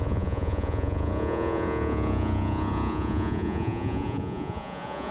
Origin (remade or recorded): remade